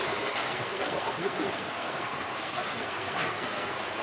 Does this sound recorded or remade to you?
remade